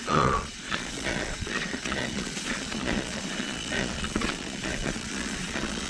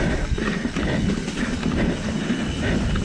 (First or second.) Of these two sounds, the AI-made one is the first